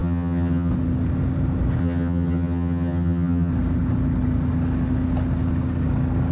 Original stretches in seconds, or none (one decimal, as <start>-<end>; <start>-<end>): 0.7-1.8; 3.5-6.3